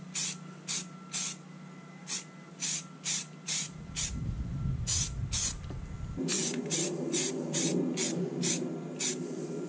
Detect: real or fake real